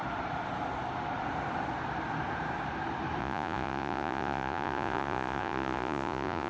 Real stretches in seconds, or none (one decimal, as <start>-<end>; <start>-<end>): 0.0-3.2